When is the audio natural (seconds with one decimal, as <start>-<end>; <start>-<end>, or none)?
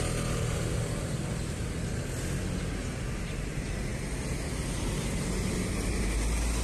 0.0-6.6